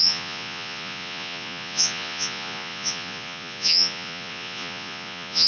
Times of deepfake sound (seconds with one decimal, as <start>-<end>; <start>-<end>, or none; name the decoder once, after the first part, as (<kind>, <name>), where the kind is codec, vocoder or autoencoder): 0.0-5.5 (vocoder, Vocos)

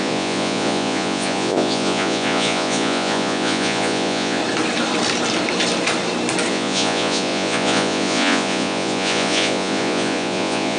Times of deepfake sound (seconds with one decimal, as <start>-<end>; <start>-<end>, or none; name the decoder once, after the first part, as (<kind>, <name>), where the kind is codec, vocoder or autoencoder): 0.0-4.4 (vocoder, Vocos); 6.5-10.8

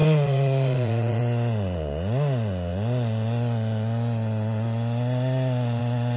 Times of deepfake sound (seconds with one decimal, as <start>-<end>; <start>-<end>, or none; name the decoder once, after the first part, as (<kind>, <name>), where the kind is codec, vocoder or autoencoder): 0.0-1.2 (vocoder, Vocos)